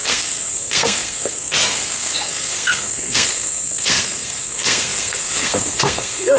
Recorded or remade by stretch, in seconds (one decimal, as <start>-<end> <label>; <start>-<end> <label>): 0.0-6.4 remade

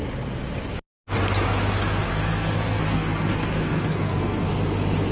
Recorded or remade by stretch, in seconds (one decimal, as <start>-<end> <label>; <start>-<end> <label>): 0.0-2.1 recorded; 2.1-4.5 remade; 4.5-5.1 recorded

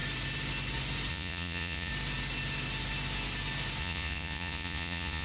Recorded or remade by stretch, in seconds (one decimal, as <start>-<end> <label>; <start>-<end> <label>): 0.0-1.1 recorded; 1.1-1.9 remade; 1.9-3.8 recorded; 3.8-5.2 remade

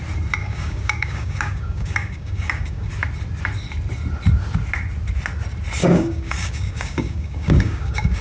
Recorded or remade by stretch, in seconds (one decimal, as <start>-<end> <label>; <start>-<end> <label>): 0.0-0.4 recorded; 0.4-2.9 remade; 2.9-5.8 recorded; 5.8-8.2 remade

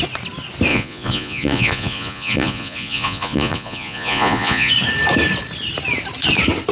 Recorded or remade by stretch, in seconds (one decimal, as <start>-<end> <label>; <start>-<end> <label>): 0.0-0.7 recorded; 0.7-4.7 remade; 4.7-6.7 recorded